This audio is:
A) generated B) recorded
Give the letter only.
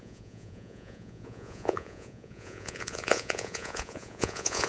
A